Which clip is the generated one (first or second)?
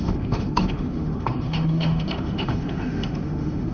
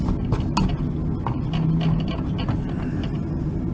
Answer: first